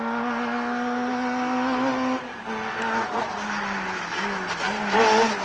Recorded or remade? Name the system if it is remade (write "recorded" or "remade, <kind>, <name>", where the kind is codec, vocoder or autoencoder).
recorded